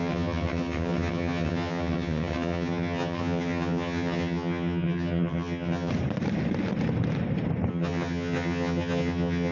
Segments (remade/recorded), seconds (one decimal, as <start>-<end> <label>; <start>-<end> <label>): 0.0-5.9 remade; 5.9-7.7 recorded; 7.7-9.5 remade